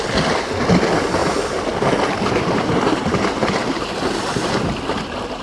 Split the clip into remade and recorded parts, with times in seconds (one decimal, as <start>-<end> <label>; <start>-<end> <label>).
0.0-5.4 recorded